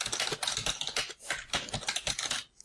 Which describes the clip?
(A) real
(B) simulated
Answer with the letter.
A